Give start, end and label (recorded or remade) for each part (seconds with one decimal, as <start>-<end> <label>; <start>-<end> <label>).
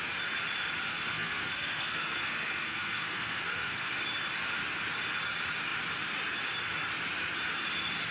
0.0-0.9 recorded; 0.9-3.9 remade; 3.9-8.1 recorded